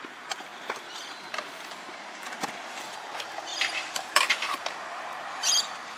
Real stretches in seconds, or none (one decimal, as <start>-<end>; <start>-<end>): none